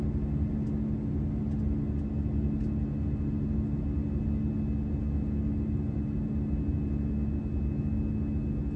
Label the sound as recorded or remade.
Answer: recorded